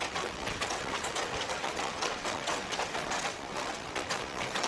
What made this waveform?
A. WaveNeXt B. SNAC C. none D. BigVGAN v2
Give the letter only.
A